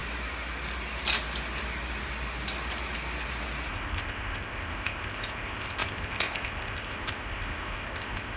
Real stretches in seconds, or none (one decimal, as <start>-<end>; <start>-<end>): 0.0-3.7